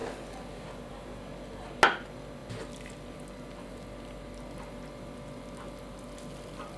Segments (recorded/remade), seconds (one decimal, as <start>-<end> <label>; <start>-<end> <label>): 0.0-6.8 recorded